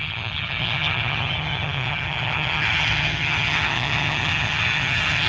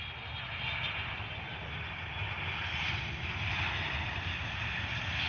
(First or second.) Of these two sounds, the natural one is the second